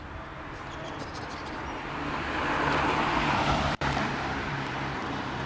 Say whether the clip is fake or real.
fake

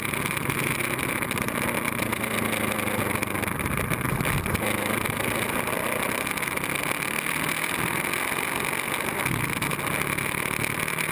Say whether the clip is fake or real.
real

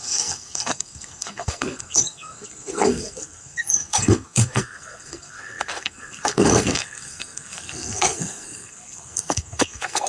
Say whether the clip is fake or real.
fake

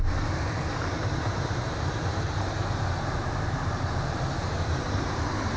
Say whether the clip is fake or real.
fake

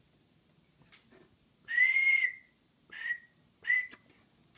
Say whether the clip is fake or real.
real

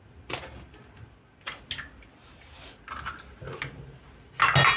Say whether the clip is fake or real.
real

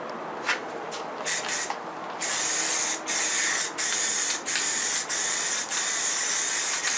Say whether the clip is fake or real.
real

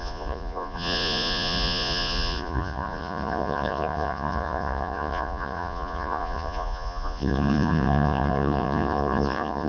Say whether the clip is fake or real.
fake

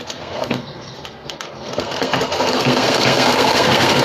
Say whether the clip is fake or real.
fake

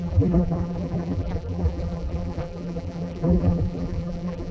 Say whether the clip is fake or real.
fake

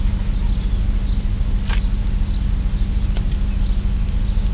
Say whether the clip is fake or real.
real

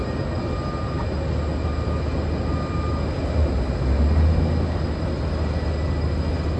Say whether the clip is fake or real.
real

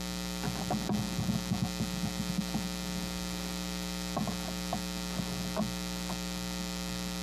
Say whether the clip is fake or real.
real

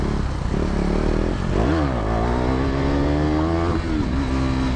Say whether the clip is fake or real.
real